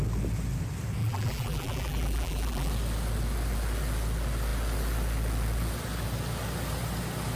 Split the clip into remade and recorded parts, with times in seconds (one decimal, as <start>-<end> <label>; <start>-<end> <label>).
0.0-1.0 recorded; 1.0-2.7 remade; 2.7-7.4 recorded